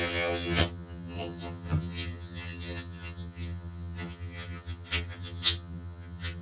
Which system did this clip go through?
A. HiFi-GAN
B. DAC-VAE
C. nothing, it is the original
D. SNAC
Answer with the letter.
A